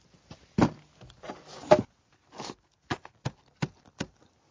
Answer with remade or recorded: recorded